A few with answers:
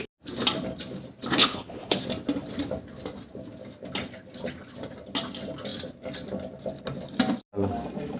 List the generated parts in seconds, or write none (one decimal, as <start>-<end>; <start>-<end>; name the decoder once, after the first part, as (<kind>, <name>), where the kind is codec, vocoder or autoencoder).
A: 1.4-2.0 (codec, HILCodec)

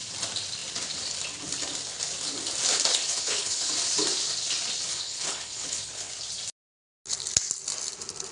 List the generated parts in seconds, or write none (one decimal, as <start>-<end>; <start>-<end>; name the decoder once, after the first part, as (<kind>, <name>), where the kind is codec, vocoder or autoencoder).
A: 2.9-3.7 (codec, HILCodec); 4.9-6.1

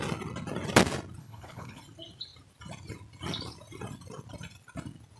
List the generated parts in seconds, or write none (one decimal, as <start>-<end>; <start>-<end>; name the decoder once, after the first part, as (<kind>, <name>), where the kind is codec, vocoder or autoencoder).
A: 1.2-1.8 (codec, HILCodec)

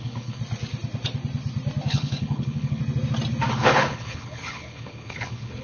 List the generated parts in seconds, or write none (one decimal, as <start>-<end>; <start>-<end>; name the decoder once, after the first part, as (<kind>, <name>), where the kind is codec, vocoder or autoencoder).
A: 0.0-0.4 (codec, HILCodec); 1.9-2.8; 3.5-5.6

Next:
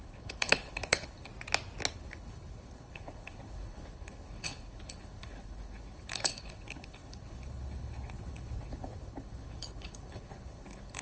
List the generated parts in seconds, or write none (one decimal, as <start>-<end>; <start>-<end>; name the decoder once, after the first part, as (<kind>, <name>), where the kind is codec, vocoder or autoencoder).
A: 0.0-1.3 (codec, HILCodec); 1.9-11.0

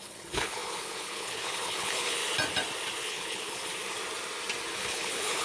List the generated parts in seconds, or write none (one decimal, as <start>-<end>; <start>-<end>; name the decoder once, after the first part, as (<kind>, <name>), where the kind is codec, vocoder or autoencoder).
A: 0.0-2.2 (codec, HILCodec); 3.0-3.7; 4.7-5.4

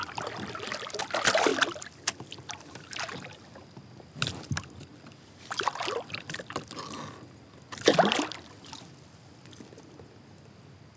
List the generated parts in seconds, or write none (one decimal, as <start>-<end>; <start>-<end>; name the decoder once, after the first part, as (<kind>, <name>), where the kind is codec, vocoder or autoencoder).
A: none

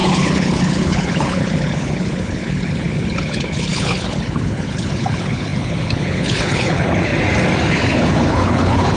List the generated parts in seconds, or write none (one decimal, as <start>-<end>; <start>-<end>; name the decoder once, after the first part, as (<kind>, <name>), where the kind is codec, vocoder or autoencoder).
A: 0.0-7.1 (codec, HILCodec); 7.7-9.0